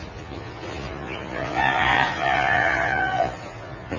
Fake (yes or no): yes